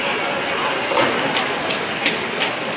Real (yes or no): yes